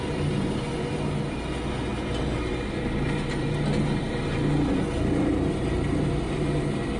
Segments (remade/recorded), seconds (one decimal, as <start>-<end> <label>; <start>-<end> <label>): 0.0-7.0 recorded